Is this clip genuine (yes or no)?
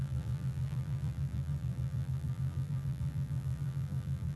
no